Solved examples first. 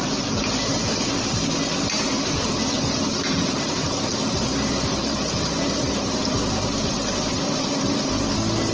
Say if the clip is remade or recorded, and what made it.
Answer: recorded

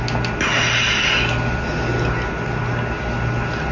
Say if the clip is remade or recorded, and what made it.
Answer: recorded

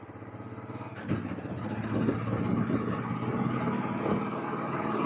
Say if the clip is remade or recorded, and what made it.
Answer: recorded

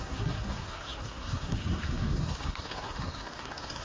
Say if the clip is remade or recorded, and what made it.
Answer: remade, codec, SNAC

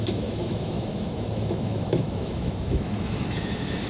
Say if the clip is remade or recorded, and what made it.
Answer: remade, autoencoder, DAC-VAE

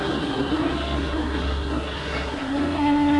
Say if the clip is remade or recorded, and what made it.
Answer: remade, codec, SNAC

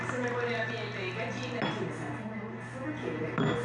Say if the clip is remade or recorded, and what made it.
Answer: recorded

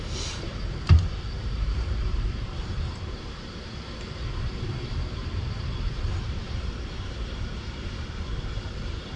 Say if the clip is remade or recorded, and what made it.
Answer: remade, vocoder, BigVGAN v2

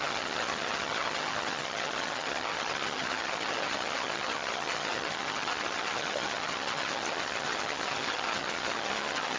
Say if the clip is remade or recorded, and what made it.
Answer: remade, vocoder, HiFi-GAN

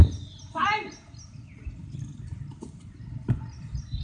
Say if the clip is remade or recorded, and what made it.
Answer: recorded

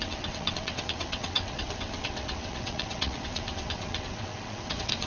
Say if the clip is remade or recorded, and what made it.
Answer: remade, vocoder, WaveNeXt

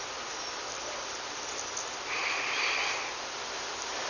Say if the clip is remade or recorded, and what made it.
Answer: recorded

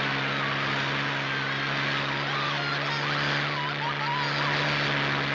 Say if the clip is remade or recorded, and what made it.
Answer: recorded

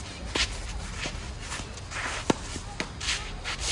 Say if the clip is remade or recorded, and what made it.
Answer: recorded